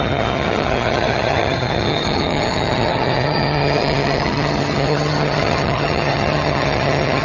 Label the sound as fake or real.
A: fake